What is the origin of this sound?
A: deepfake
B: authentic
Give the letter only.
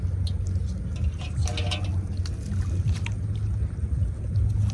B